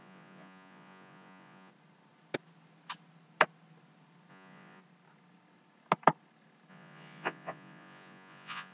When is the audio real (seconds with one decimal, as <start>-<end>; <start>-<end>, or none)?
1.7-4.3; 4.8-6.7